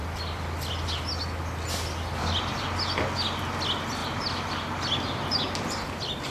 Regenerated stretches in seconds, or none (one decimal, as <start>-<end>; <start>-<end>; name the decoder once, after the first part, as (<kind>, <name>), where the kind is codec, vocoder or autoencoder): none